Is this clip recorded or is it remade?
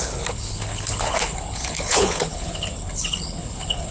remade